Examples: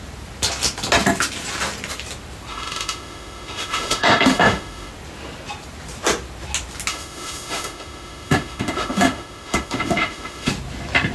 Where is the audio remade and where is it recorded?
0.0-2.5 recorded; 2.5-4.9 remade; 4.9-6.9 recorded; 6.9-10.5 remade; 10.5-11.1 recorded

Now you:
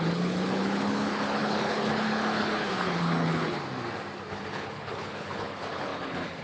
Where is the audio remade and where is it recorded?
0.0-3.6 remade; 3.6-4.3 recorded; 4.3-6.4 remade